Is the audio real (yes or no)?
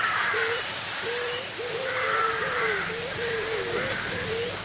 no